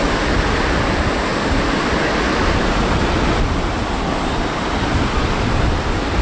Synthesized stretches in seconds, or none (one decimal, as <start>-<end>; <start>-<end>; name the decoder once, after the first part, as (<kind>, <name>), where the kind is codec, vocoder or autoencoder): none

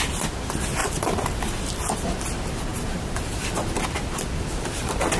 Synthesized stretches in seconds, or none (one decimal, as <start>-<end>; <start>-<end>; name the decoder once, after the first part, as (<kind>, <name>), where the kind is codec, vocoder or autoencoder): 0.8-1.6 (vocoder, BigVGAN v2); 2.7-3.2

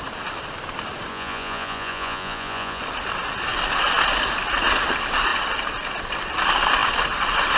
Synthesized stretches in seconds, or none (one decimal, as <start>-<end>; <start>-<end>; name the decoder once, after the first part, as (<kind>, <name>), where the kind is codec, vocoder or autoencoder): 1.1-2.8 (vocoder, Vocos)

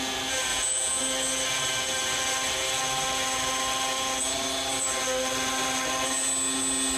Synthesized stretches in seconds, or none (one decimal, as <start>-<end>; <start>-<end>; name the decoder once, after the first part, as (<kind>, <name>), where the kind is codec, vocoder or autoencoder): 0.5-1.0 (vocoder, Vocos)

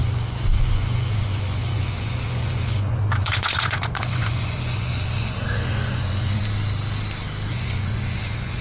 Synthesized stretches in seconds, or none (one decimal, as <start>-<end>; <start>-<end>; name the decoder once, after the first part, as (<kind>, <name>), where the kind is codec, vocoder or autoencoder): 0.0-6.4 (vocoder, Vocos); 7.5-8.6